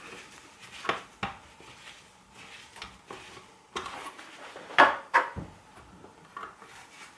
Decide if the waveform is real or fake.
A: real